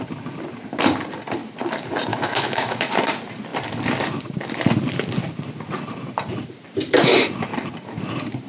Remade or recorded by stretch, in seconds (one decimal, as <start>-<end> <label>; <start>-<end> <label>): 0.0-2.1 recorded; 2.1-2.9 remade; 2.9-8.5 recorded